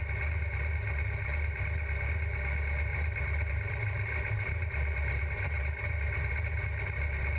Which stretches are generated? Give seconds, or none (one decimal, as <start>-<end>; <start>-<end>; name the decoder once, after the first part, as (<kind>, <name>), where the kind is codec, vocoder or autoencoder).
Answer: 2.9-6.6 (vocoder, BigVGAN v2)